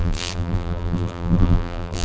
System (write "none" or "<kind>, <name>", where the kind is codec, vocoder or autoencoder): vocoder, BigVGAN v2